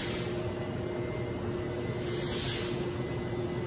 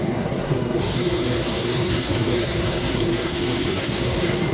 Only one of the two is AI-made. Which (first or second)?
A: second